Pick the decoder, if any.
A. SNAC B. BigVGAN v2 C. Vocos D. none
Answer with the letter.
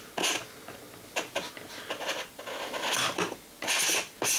D